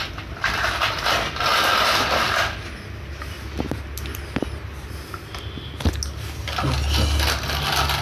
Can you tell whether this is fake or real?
real